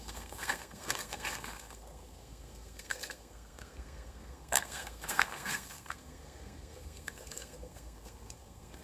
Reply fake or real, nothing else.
fake